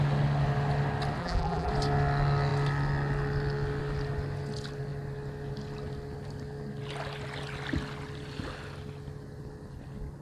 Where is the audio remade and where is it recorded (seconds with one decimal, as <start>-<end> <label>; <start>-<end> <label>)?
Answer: 0.0-1.2 recorded; 1.2-1.7 remade; 1.7-10.2 recorded